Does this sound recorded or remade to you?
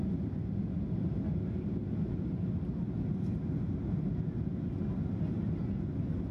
recorded